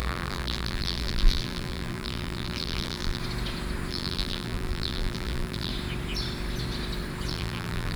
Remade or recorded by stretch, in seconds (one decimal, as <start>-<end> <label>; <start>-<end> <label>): 0.0-3.2 remade; 3.2-3.9 recorded; 3.9-5.7 remade; 5.7-7.3 recorded; 7.3-8.0 remade